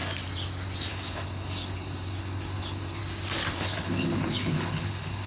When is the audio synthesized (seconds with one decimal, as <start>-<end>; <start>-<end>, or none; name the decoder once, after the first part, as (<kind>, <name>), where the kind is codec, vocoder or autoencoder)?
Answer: 0.9-3.0 (codec, HILCodec); 3.5-5.3